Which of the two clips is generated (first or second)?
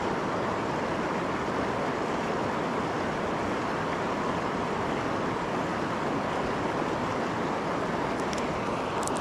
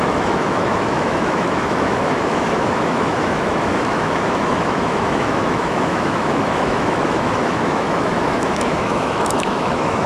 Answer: second